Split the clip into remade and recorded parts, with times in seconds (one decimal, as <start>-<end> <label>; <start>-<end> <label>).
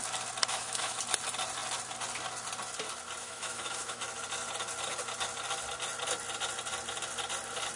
0.0-0.5 recorded; 0.5-1.0 remade; 1.0-3.2 recorded; 3.2-4.0 remade; 4.0-7.8 recorded